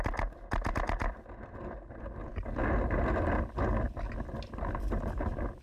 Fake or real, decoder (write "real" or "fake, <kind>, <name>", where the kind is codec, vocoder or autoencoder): real